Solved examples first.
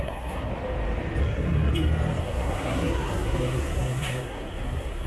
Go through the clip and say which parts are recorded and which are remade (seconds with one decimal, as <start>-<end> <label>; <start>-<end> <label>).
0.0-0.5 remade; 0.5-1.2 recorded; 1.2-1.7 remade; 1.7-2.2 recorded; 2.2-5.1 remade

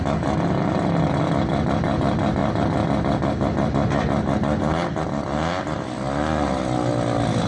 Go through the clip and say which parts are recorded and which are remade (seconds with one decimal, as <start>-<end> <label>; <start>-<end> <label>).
0.0-7.5 recorded

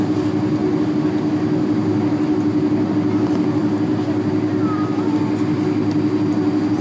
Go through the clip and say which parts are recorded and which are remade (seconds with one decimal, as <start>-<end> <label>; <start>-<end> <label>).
0.0-6.8 recorded